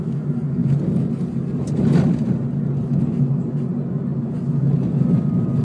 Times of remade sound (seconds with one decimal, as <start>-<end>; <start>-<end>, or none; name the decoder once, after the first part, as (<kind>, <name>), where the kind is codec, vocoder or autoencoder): none